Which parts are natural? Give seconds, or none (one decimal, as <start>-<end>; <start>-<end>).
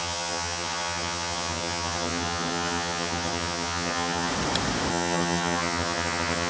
4.3-4.9